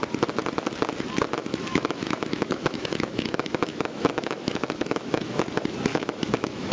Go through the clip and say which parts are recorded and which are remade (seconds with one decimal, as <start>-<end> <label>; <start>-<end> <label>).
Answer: 0.0-1.4 recorded; 1.4-5.4 remade; 5.4-5.9 recorded; 5.9-6.7 remade